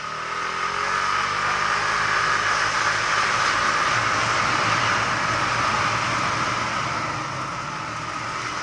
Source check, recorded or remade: recorded